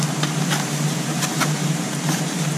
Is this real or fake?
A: fake